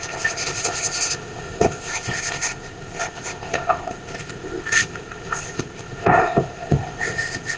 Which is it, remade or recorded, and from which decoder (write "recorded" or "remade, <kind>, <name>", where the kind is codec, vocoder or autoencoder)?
remade, codec, ZipCodec